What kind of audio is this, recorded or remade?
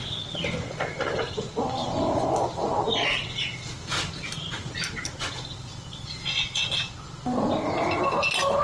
recorded